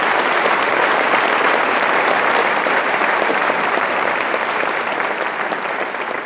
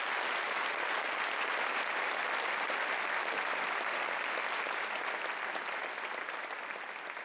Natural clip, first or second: second